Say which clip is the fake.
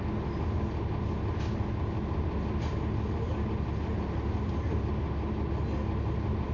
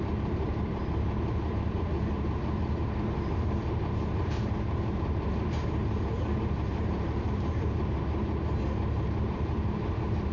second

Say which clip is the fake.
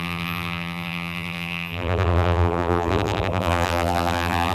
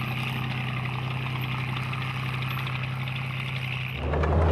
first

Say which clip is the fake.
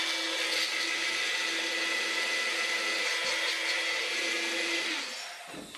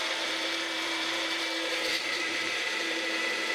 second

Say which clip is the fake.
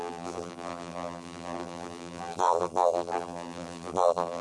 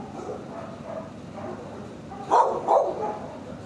first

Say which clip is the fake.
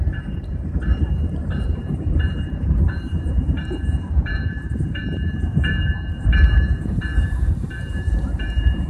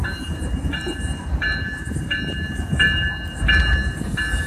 first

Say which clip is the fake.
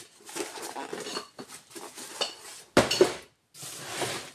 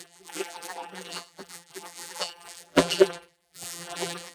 second